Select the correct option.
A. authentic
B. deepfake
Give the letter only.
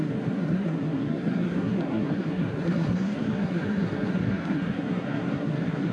B